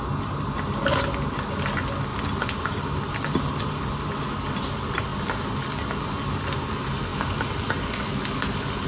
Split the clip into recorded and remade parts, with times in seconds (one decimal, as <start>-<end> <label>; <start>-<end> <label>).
0.0-2.1 recorded; 2.1-4.0 remade; 4.0-8.9 recorded